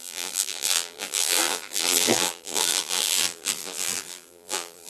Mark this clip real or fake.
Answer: fake